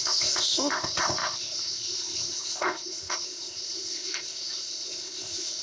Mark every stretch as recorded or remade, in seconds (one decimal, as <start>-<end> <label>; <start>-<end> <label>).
0.0-5.6 remade